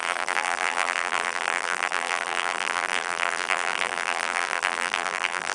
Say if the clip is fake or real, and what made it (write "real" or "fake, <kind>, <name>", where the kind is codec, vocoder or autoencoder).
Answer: fake, vocoder, BigVGAN v2